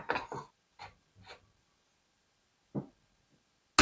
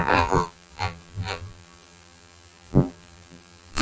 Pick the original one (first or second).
first